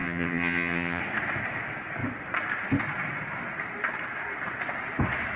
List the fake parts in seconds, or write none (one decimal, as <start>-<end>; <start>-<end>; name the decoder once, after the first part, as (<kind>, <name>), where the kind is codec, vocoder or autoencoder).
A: 0.0-1.0 (vocoder, HiFi-GAN)